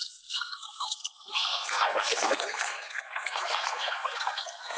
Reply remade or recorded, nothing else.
remade